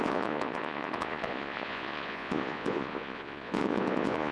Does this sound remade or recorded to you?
remade